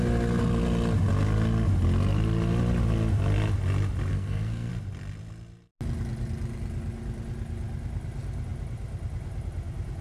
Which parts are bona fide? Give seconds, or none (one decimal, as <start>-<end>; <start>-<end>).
0.0-4.1; 4.7-10.0